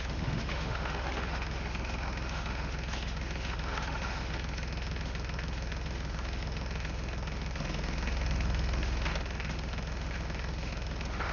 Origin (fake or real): fake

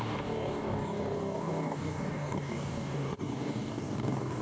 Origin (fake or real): fake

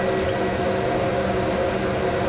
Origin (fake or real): real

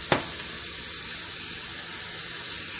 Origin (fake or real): real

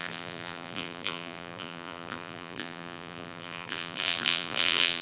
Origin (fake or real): fake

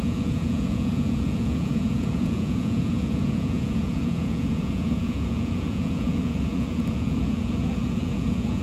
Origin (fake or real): fake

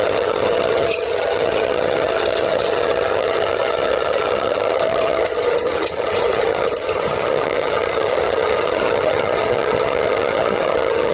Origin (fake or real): fake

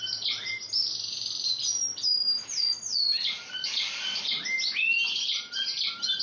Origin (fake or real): real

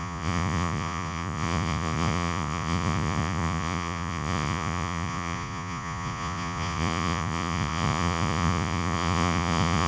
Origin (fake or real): fake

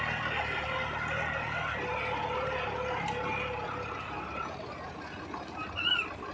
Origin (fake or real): real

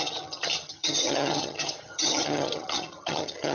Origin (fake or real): fake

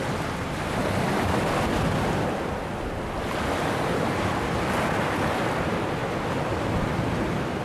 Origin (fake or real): real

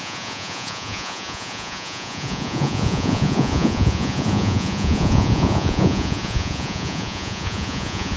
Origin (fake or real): fake